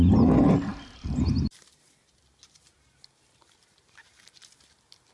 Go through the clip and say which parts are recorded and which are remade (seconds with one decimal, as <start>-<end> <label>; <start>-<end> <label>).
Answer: 0.0-5.1 recorded